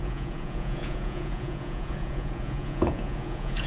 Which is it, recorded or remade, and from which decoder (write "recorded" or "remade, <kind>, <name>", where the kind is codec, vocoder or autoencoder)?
remade, vocoder, Vocos